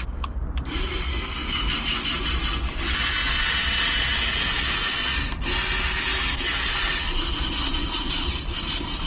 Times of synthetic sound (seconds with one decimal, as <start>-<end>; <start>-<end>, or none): 1.1-1.7